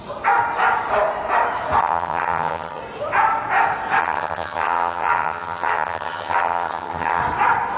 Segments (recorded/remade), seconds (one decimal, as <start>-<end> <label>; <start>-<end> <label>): 0.0-1.8 recorded; 1.8-2.8 remade; 2.8-4.0 recorded; 4.0-7.2 remade; 7.2-7.8 recorded